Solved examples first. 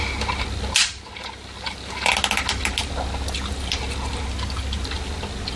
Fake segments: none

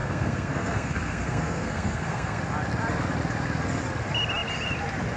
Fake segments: 0.0-2.4

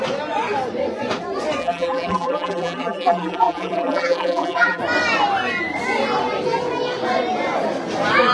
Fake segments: 1.6-4.8